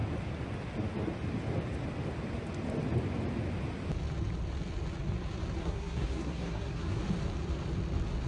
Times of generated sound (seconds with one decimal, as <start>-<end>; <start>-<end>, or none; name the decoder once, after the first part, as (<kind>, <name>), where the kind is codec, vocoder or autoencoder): 5.6-7.0 (codec, SNAC)